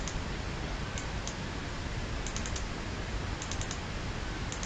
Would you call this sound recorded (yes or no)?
yes